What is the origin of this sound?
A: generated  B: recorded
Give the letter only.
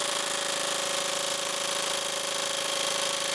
B